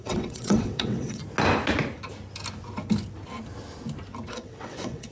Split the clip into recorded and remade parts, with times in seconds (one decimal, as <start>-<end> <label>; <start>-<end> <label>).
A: 0.0-1.2 remade; 1.2-4.3 recorded; 4.3-5.1 remade